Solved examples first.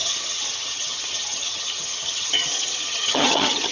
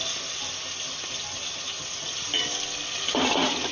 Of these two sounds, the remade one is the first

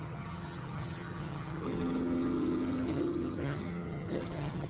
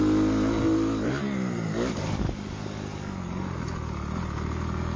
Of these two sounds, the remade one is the first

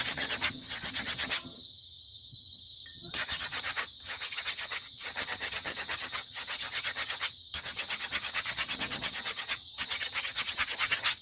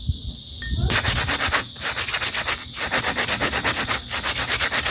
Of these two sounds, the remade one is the first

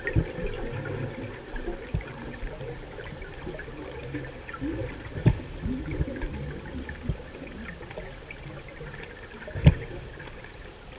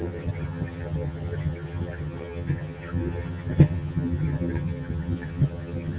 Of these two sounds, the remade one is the second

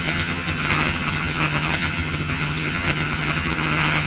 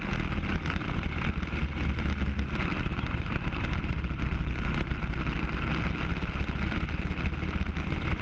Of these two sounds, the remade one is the first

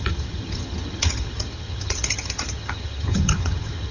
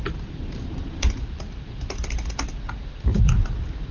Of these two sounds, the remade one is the first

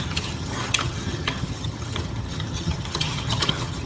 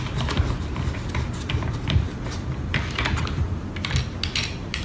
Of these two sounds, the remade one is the first